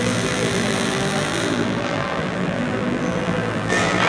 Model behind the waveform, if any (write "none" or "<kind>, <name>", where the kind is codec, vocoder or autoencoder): vocoder, BigVGAN v2